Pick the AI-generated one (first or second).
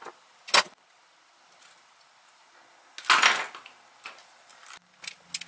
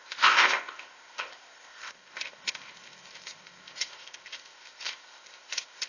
second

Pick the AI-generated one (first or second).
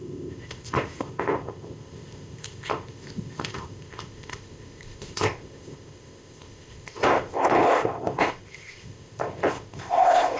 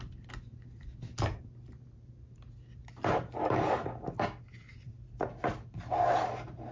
first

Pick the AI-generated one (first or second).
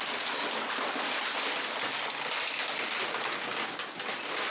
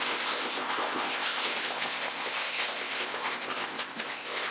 second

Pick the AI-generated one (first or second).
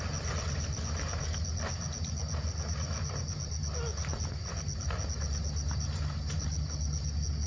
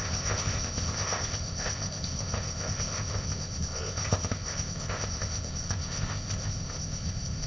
second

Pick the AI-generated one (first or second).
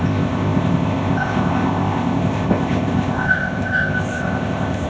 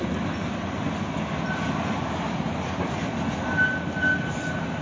first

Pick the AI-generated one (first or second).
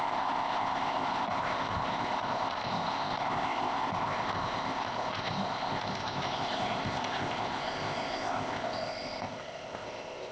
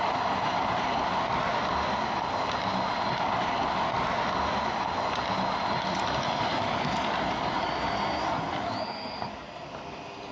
first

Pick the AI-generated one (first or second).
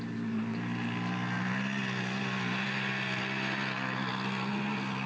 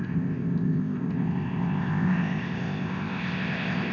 second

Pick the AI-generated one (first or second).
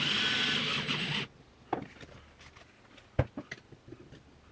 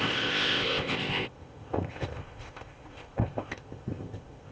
second